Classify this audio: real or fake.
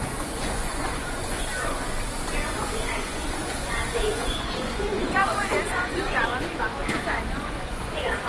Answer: fake